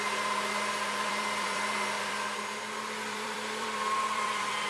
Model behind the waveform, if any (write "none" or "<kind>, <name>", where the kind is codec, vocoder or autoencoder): vocoder, BigVGAN v2